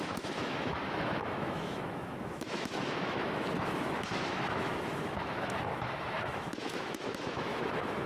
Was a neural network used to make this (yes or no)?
yes